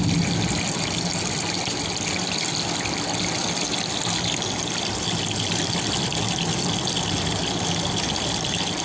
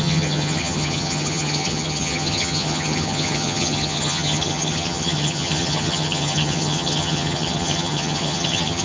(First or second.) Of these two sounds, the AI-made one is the second